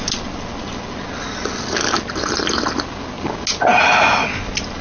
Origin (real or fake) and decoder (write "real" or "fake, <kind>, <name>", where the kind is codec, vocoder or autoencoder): real